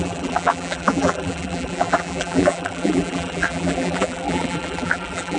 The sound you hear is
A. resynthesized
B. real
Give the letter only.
A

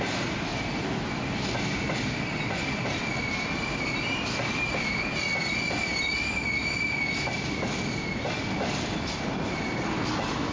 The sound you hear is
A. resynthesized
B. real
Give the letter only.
B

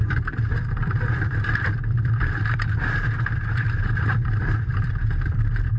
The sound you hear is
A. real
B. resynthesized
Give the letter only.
B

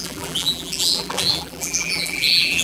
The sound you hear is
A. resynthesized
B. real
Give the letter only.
A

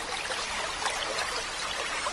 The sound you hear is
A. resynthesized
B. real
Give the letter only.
B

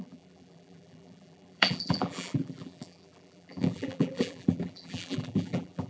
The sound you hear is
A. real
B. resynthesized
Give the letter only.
B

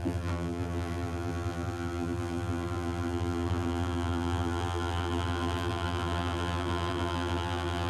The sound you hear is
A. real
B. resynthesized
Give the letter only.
B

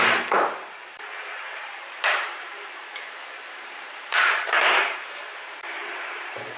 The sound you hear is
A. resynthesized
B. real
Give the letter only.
A